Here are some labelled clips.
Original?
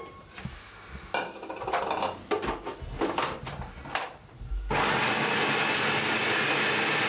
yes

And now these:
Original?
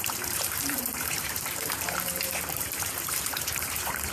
no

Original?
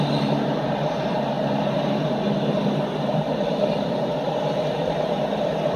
no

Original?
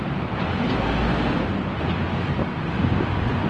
yes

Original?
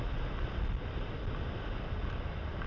no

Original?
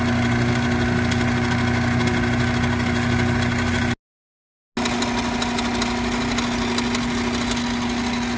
yes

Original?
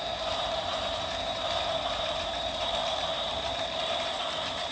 no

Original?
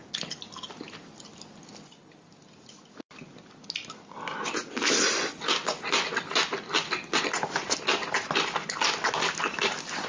yes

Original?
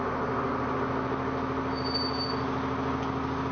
yes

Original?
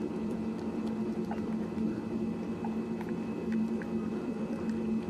no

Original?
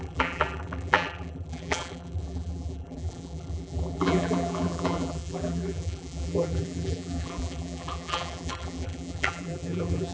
no